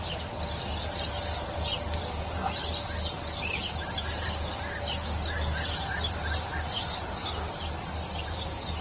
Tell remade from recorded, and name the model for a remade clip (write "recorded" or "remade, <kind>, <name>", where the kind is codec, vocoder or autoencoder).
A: recorded